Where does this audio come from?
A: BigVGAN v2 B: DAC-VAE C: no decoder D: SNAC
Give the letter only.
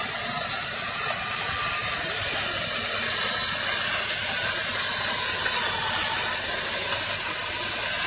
C